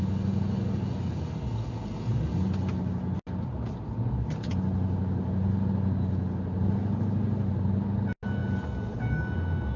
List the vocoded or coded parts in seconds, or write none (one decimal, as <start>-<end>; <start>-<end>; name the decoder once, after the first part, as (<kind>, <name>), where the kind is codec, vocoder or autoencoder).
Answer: none